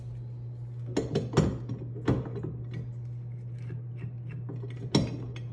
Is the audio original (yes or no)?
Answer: yes